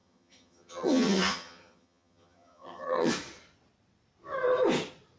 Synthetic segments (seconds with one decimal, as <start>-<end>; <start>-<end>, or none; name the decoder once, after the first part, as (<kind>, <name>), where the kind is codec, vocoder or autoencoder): 0.0-3.1 (vocoder, HiFi-GAN)